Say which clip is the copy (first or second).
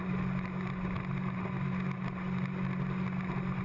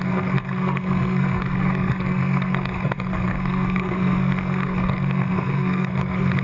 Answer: second